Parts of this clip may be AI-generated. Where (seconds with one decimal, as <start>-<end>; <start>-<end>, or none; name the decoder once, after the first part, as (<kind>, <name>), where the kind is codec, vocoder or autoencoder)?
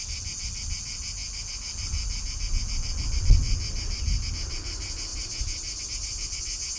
none